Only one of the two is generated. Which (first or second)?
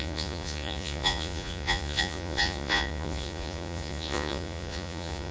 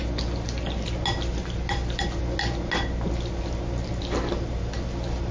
first